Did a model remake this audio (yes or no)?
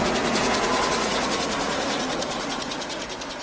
yes